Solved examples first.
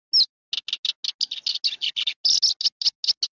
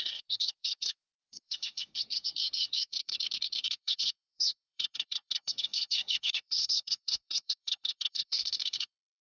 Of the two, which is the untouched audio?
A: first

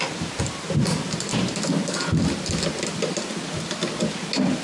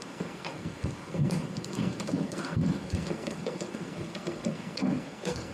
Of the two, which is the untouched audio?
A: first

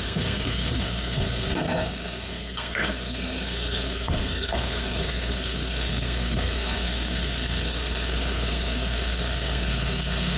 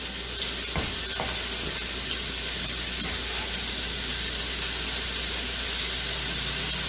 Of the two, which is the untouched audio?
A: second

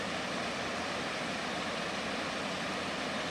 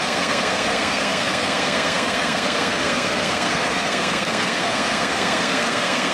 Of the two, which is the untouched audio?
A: first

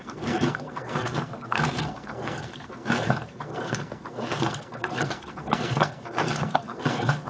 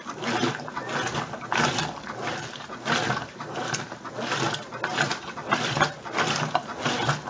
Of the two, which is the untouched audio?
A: second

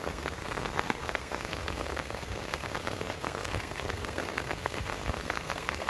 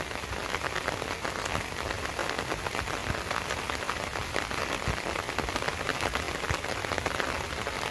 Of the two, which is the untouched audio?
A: second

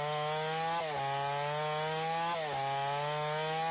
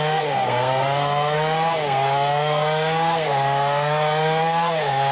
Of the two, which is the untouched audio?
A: first